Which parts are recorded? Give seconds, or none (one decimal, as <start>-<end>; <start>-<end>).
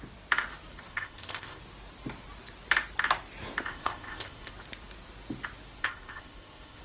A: 0.0-0.9; 1.6-3.7; 4.5-5.8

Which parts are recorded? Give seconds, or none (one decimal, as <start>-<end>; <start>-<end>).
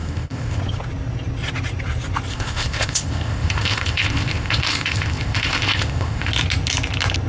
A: 0.6-2.3; 6.3-7.3